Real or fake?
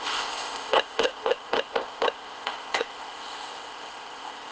fake